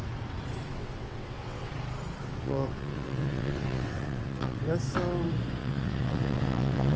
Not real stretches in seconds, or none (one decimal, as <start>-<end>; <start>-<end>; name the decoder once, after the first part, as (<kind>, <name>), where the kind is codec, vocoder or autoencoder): 0.7-1.7 (vocoder, WaveNeXt); 2.2-4.6; 5.6-7.0